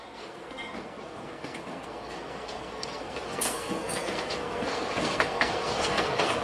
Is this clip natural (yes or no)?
no